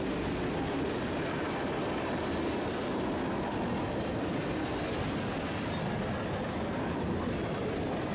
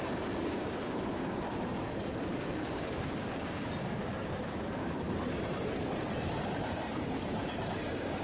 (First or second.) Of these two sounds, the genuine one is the first